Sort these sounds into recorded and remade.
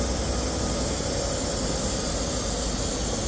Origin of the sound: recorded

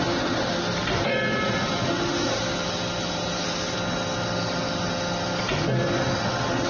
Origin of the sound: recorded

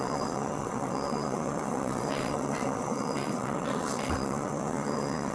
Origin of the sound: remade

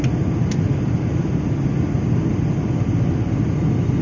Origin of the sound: recorded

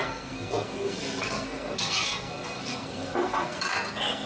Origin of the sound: remade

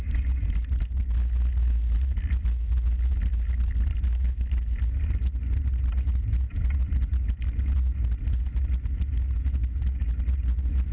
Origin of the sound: recorded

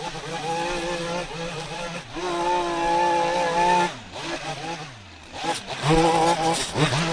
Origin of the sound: recorded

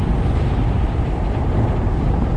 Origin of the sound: recorded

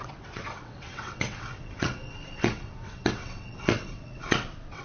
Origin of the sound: remade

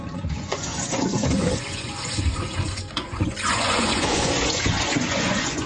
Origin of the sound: remade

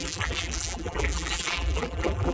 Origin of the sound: remade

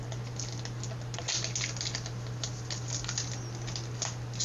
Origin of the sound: recorded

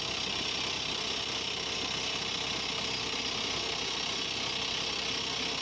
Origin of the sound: recorded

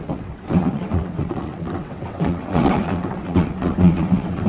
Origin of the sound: remade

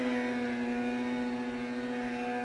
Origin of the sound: recorded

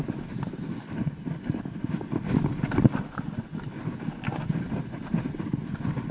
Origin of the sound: recorded